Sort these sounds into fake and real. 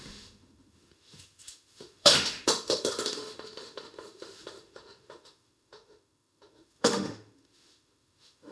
fake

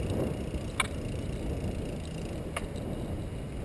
real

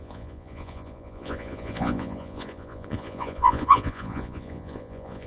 fake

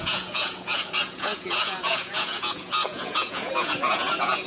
fake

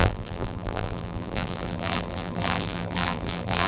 fake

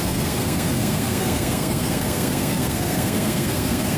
fake